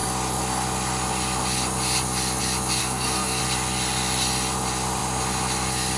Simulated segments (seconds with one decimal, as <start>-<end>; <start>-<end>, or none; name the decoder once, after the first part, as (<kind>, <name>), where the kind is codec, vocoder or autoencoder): 2.8-3.4 (codec, SNAC)